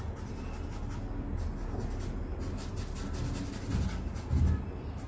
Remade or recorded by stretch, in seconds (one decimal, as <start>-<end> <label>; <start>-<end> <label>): 0.0-5.1 recorded